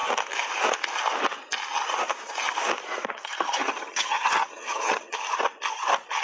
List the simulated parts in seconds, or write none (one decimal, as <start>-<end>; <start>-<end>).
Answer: 3.6-5.1